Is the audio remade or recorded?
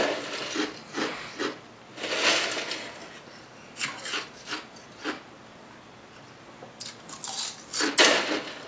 recorded